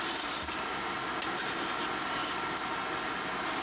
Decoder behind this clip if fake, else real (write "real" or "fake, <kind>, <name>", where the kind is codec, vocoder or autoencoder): real